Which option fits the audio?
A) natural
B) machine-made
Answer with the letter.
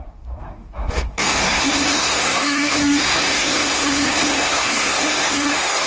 B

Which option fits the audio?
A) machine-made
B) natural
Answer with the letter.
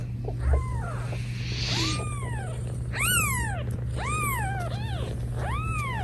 B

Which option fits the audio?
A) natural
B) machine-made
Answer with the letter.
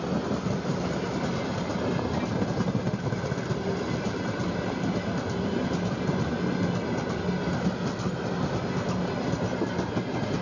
A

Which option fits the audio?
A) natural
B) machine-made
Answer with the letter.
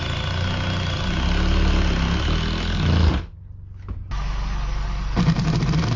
A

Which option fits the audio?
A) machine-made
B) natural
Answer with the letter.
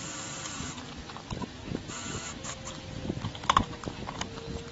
B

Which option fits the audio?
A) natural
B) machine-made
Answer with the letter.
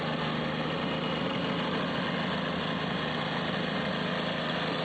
A